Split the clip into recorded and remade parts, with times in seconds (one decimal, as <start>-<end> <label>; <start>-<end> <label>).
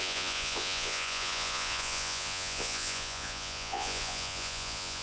0.0-5.0 remade